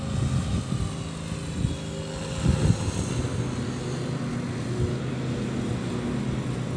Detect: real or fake real